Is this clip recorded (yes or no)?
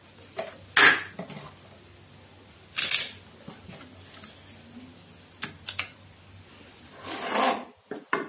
yes